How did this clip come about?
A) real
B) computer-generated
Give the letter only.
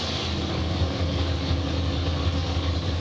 B